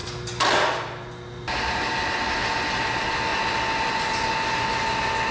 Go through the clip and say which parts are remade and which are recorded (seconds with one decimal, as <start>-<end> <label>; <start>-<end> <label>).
0.0-5.3 recorded